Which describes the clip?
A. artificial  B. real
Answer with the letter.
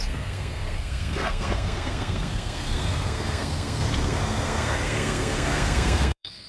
A